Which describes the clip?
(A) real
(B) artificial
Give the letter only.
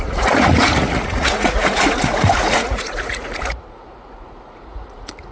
B